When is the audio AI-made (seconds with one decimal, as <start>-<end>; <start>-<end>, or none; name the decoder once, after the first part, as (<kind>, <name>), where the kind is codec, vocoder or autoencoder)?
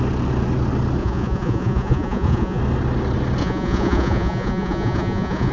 1.0-2.6 (vocoder, Vocos); 3.4-5.5